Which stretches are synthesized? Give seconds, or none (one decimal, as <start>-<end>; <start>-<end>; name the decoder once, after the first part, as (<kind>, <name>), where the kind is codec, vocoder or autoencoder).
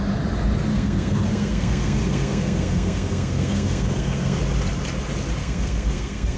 0.7-4.4 (codec, SNAC); 5.4-6.4